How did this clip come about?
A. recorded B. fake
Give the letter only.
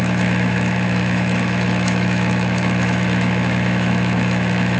B